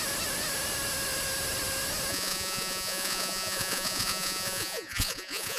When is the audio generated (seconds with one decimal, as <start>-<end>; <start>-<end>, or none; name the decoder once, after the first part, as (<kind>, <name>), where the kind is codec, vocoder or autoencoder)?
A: 2.1-5.6 (vocoder, Vocos)